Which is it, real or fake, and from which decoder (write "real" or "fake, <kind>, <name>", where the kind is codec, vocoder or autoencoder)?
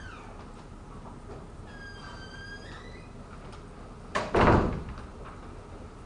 real